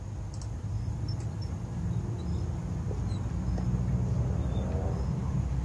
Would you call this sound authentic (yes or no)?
yes